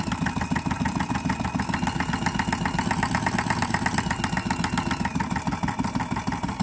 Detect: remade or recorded recorded